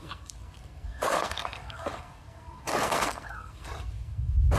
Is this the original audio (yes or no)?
no